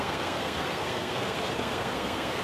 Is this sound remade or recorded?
remade